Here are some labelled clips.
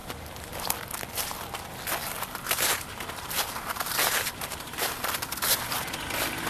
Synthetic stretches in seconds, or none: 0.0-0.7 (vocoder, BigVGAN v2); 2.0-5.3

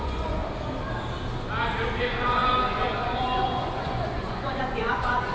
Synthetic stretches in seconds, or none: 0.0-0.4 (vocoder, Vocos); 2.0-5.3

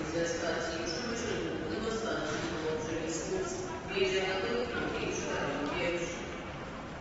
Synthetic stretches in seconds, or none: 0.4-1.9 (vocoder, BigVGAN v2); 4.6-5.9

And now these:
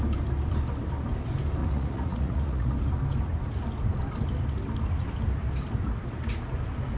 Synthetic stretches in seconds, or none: 1.6-2.7 (vocoder, Vocos)

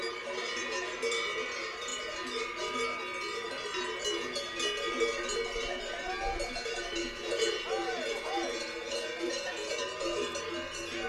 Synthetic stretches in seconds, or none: 7.0-9.8 (vocoder, Vocos)

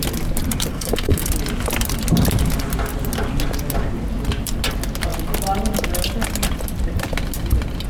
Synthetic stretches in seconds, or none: 0.7-1.3 (codec, SNAC)

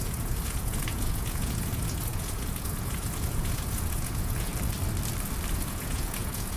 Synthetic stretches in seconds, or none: 0.0-4.5 (vocoder, Vocos); 5.5-6.6